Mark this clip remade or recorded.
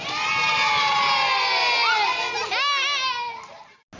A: recorded